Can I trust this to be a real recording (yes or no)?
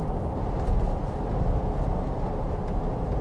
yes